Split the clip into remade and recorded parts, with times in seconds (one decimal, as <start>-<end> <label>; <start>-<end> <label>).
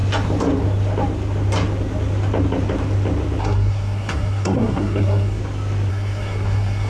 0.0-3.4 recorded; 3.4-5.4 remade; 5.4-5.9 recorded; 5.9-6.9 remade